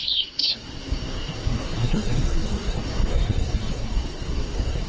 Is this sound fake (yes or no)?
yes